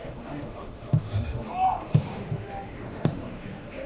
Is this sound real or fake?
fake